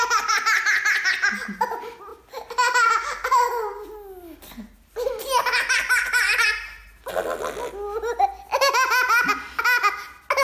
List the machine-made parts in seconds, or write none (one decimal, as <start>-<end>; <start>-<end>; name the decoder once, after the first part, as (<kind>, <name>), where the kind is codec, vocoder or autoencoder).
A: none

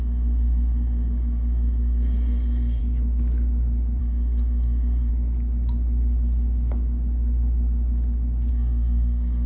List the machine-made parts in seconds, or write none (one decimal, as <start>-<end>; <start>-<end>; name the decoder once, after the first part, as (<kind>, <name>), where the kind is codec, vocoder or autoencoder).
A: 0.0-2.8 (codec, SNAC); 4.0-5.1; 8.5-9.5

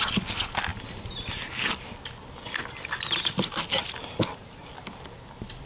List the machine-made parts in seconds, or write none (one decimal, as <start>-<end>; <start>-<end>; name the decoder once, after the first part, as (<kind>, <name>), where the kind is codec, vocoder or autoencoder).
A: none

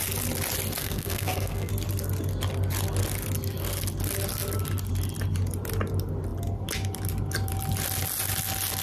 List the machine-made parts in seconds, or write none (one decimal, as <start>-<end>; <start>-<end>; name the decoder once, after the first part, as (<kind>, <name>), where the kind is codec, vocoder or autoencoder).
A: 0.8-1.7 (codec, SNAC)

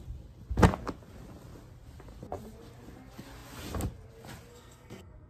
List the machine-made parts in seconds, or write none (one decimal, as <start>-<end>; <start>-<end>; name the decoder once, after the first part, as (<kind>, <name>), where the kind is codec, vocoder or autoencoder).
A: 4.5-5.3 (codec, SNAC)

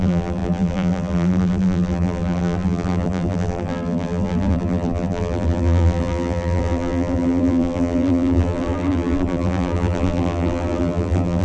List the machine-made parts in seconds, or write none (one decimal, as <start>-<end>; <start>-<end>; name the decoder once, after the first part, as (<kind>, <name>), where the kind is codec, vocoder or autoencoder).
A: 0.0-11.4 (vocoder, BigVGAN v2)